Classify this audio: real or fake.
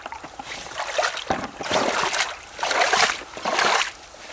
real